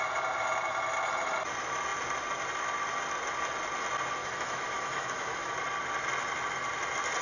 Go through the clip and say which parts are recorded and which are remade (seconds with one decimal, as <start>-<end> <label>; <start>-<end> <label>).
0.0-4.2 recorded; 4.2-5.5 remade; 5.5-7.2 recorded